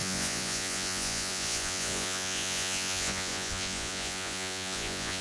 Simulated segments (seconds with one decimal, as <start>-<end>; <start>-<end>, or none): 0.0-5.2